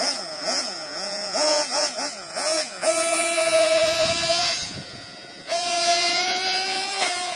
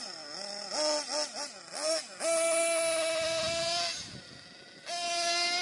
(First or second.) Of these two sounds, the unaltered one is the second